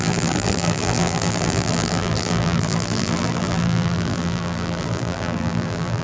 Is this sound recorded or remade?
remade